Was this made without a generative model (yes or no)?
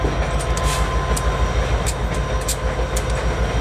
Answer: yes